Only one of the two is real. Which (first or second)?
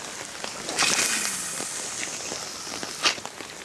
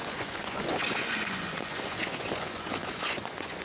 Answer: first